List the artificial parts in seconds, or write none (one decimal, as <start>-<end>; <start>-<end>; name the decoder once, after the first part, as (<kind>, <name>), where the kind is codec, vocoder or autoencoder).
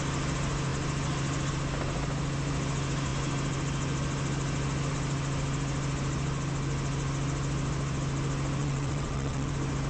8.6-9.5 (vocoder, WaveNeXt)